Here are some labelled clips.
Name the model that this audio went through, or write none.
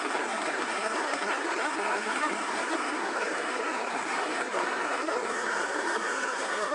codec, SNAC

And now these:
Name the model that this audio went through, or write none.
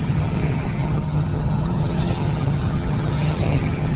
vocoder, HiFi-GAN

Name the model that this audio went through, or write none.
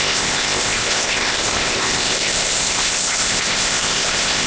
codec, ZipCodec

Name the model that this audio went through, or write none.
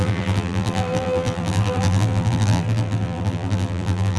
vocoder, BigVGAN v2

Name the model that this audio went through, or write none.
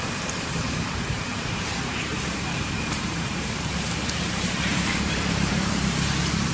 vocoder, BigVGAN v2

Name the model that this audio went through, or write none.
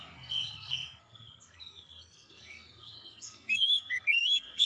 codec, SNAC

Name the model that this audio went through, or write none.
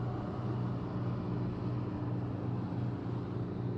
none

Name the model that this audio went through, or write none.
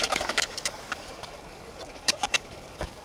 codec, DAC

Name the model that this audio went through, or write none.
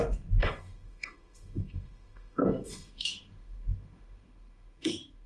autoencoder, DAC-VAE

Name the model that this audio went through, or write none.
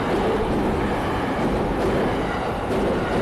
none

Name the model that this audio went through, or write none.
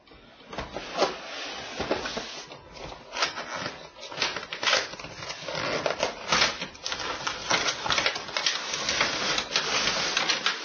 none